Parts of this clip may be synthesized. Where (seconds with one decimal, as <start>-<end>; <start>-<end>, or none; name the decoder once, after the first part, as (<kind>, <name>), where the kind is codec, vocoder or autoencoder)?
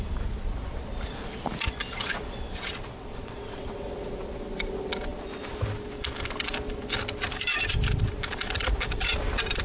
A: 3.1-4.0 (vocoder, WaveNeXt)